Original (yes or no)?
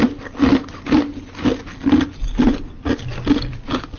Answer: yes